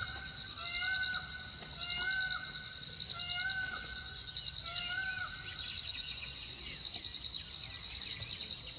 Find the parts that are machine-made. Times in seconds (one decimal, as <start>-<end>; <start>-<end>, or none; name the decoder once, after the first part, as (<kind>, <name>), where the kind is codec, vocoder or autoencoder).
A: 3.7-4.3 (vocoder, Vocos); 5.9-6.6